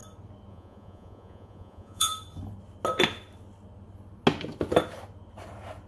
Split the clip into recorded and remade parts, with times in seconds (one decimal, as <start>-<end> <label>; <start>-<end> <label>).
0.0-0.5 recorded; 0.5-2.1 remade; 2.1-5.9 recorded